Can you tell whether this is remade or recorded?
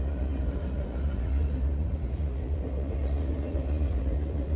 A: remade